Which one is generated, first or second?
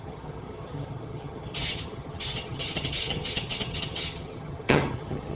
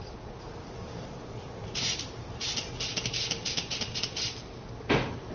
first